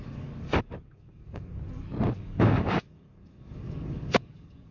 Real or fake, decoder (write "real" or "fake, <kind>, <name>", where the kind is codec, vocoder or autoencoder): fake, codec, DAC